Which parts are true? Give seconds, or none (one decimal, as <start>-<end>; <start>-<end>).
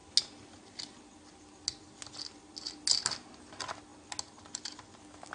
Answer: 0.0-5.3